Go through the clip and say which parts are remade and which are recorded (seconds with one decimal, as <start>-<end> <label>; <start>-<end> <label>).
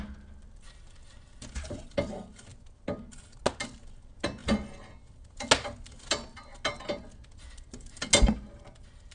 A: 0.0-9.1 recorded